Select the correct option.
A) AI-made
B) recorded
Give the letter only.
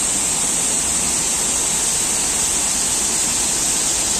B